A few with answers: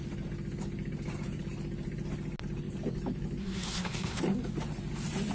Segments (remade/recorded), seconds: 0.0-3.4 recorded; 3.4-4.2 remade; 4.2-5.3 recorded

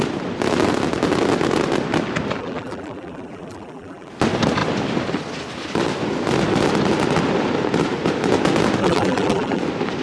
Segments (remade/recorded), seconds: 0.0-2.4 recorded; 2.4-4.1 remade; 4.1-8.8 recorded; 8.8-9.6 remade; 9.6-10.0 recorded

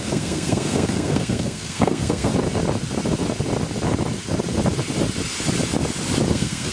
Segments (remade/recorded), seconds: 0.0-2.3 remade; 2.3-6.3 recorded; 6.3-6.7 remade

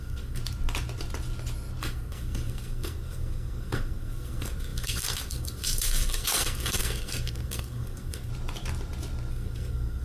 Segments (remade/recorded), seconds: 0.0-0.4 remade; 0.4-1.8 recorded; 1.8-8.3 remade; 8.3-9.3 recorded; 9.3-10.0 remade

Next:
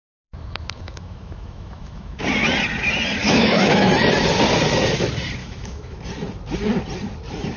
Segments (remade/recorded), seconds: 0.0-2.2 remade; 2.2-3.2 recorded; 3.2-3.9 remade; 3.9-5.4 recorded; 5.4-6.0 remade; 6.0-7.6 recorded

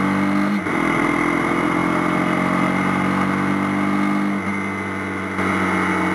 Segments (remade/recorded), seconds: 0.0-6.1 recorded